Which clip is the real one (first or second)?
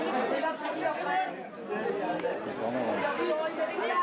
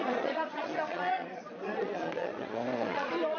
first